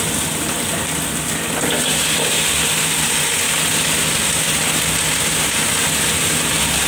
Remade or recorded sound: recorded